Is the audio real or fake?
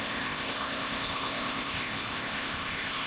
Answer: fake